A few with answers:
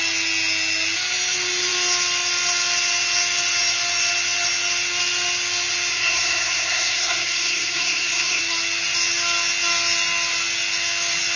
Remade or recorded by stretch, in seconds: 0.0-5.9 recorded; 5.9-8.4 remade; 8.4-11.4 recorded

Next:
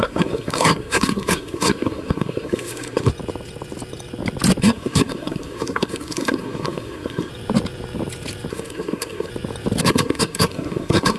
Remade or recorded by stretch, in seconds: 0.0-3.1 remade; 3.1-4.6 recorded; 4.6-7.3 remade; 7.3-8.5 recorded; 8.5-9.3 remade; 9.3-9.8 recorded; 9.8-11.2 remade